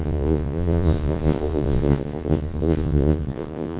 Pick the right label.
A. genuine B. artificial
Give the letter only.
B